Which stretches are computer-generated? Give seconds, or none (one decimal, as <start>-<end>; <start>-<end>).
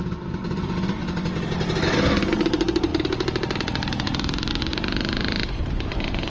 0.0-1.0; 2.4-2.9; 4.5-6.3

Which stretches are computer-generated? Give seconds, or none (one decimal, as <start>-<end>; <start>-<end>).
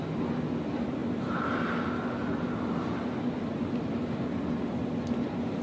1.0-4.4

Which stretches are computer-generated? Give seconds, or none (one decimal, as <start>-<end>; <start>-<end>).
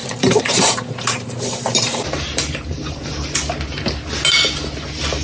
0.0-3.1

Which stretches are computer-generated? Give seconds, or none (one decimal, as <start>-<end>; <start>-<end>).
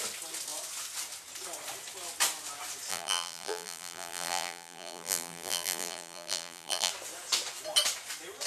2.9-6.9